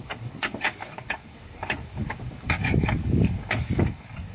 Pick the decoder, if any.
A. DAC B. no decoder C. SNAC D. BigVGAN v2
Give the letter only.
A